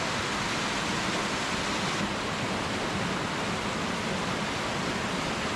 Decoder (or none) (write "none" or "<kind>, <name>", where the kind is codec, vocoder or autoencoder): none